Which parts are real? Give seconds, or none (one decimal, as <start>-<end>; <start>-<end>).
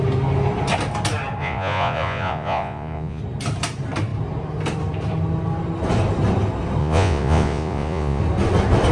0.0-1.4; 3.2-6.8; 8.2-8.9